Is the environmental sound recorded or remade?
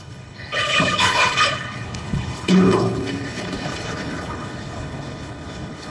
remade